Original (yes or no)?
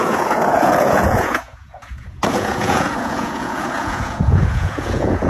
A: no